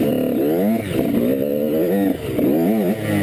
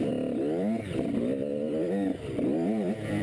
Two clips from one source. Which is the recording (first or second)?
first